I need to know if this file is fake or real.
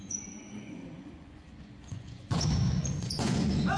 fake